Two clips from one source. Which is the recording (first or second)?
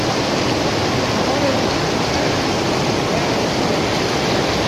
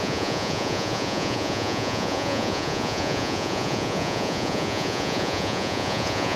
first